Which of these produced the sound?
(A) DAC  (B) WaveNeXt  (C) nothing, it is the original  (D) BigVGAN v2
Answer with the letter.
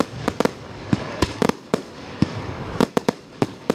A